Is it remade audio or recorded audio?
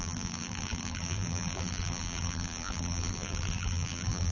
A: remade